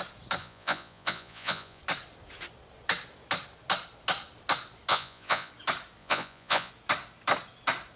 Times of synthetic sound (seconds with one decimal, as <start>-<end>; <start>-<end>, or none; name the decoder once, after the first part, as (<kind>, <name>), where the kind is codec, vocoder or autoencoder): 0.4-1.8 (vocoder, Vocos); 4.9-5.5; 6.0-6.7